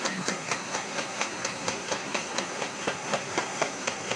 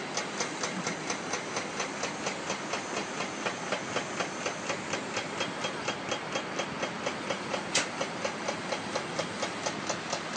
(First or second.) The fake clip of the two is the first